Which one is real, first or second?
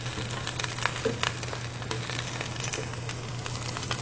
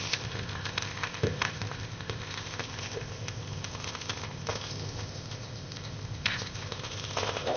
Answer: first